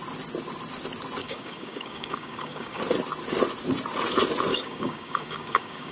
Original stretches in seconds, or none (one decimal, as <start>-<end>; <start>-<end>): 0.0-1.2; 2.8-4.5